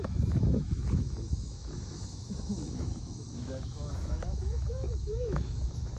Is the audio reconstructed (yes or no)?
yes